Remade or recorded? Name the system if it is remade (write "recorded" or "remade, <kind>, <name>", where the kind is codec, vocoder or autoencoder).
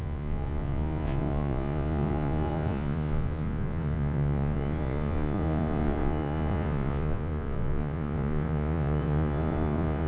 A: remade, vocoder, Vocos